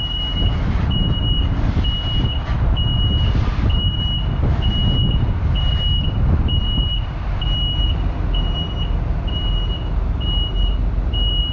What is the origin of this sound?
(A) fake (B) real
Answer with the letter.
B